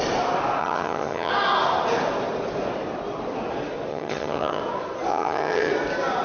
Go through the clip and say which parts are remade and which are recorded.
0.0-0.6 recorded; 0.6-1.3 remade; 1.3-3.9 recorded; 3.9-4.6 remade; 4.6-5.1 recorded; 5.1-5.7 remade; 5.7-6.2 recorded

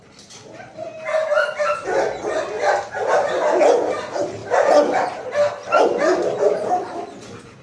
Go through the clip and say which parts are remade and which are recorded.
0.0-7.6 recorded

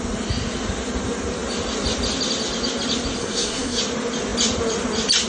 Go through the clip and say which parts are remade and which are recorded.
0.0-3.2 recorded; 3.2-3.8 remade; 3.8-5.3 recorded